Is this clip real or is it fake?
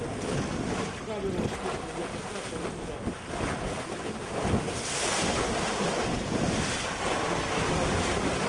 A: real